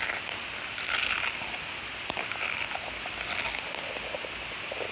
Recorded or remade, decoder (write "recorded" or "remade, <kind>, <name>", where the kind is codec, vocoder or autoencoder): recorded